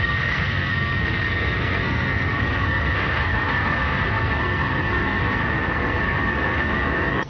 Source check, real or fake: fake